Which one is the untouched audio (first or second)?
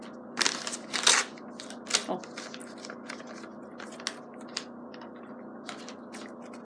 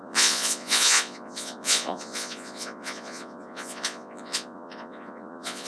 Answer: first